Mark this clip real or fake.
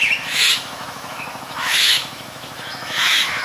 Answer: fake